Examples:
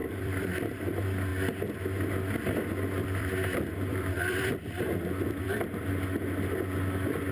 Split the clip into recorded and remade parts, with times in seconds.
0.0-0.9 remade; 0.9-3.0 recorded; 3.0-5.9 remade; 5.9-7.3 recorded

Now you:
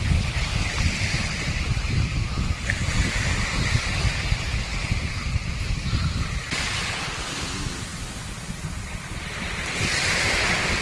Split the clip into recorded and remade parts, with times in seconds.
0.0-4.7 recorded; 4.7-6.4 remade; 6.4-10.8 recorded

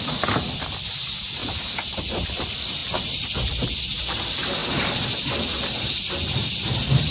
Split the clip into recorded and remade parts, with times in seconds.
0.0-1.4 remade; 1.4-1.9 recorded; 1.9-4.6 remade; 4.6-6.5 recorded; 6.5-7.1 remade

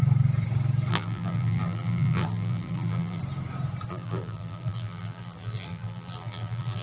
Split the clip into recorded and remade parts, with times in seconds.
0.0-0.9 recorded; 0.9-3.2 remade; 3.2-3.9 recorded; 3.9-6.8 remade

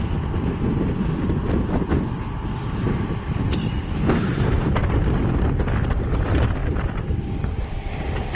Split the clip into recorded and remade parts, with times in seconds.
0.0-8.4 remade